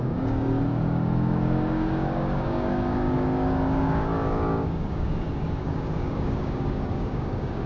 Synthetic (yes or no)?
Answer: yes